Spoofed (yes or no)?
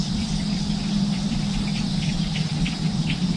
yes